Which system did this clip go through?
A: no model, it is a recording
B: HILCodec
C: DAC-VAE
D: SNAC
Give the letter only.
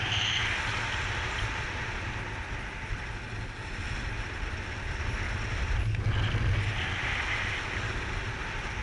A